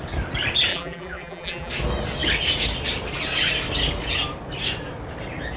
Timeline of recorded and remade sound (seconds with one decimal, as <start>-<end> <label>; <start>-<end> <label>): 0.0-0.7 recorded; 0.7-1.7 remade; 1.7-5.6 recorded